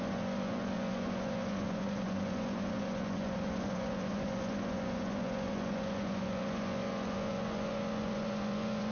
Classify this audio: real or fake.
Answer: fake